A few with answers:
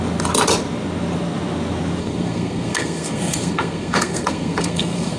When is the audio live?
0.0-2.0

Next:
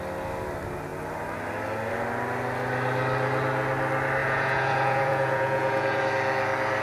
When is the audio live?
0.0-4.2; 6.0-6.8

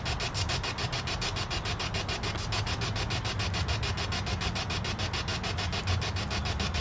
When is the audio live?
0.0-6.8

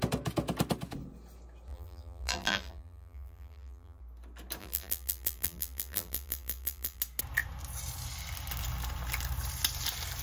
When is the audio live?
0.0-1.7; 4.0-4.6; 7.0-10.2